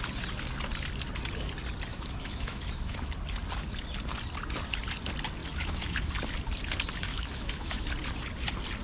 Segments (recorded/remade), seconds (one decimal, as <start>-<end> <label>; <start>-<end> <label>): 0.0-1.9 recorded; 1.9-3.1 remade; 3.1-5.4 recorded; 5.4-6.1 remade; 6.1-7.1 recorded; 7.1-7.9 remade; 7.9-8.8 recorded